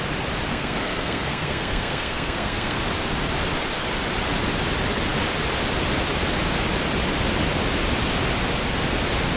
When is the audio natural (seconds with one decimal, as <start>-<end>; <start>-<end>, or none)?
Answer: 0.0-0.5; 2.8-9.4

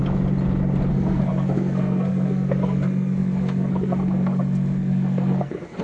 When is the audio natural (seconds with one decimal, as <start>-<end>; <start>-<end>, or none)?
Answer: 0.0-0.9

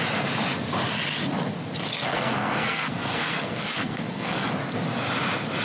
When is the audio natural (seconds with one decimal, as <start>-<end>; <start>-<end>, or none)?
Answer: 0.0-1.9; 4.5-5.6

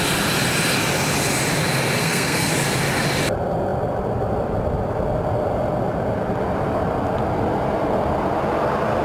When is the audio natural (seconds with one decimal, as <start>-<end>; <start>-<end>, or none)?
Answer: 0.0-2.0; 2.5-9.0

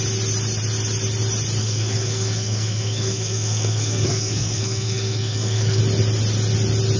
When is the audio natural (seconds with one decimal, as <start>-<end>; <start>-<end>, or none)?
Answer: 0.0-1.6; 5.8-7.0